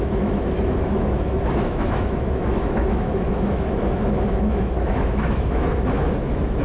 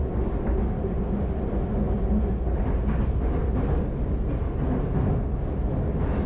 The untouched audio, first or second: second